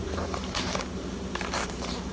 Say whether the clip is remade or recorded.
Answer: remade